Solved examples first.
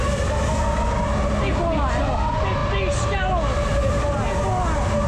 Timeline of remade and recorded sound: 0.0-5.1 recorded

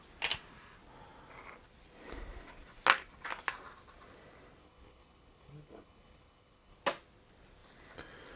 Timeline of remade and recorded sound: 0.0-4.6 recorded; 4.6-6.8 remade; 6.8-8.4 recorded

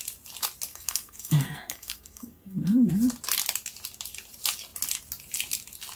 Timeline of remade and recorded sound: 0.0-0.7 recorded; 0.7-2.9 remade; 2.9-6.0 recorded

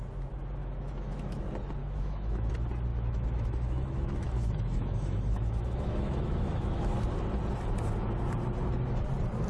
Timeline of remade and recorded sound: 0.0-0.6 recorded; 0.6-1.4 remade; 1.4-1.8 recorded; 1.8-2.5 remade; 2.5-2.9 recorded; 2.9-6.9 remade; 6.9-9.5 recorded

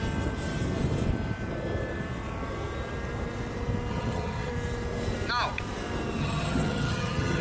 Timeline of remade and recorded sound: 0.0-3.9 recorded; 3.9-4.5 remade; 4.5-6.2 recorded; 6.2-7.4 remade

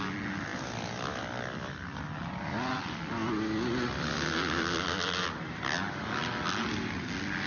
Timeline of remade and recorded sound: 0.0-7.5 recorded

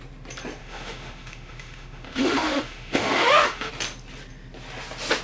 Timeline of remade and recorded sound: 0.0-0.6 recorded; 0.6-3.7 remade; 3.7-5.2 recorded

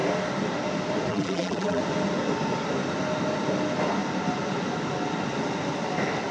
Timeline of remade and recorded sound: 0.0-1.1 recorded; 1.1-1.8 remade; 1.8-6.3 recorded